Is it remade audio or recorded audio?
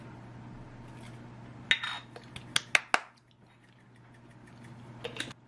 recorded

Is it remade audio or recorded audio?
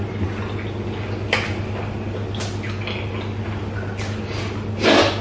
recorded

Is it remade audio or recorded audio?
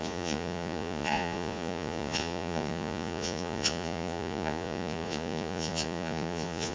remade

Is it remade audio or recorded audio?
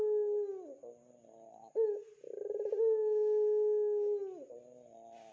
recorded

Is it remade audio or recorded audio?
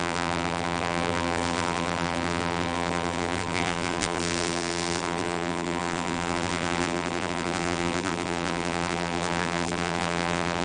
remade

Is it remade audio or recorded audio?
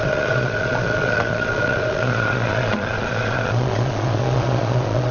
remade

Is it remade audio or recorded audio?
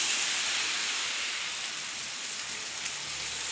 recorded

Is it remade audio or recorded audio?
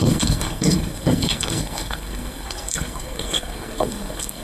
remade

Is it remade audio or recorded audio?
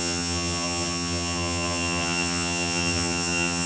remade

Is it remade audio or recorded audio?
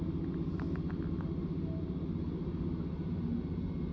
recorded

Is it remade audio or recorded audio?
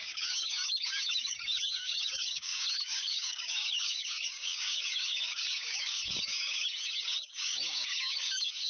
remade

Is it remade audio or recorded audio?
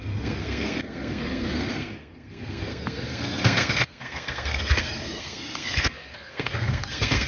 remade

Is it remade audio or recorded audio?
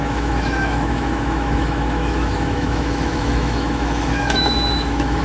remade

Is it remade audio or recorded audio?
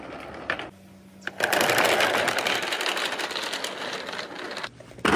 recorded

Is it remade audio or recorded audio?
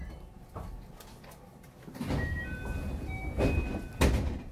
recorded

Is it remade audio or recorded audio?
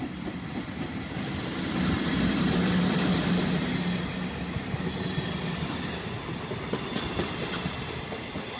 recorded